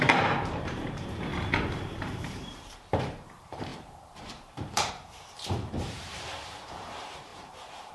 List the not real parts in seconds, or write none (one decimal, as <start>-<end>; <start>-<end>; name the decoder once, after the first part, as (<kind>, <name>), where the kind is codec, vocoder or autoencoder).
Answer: 0.0-1.3 (vocoder, BigVGAN v2); 2.0-7.9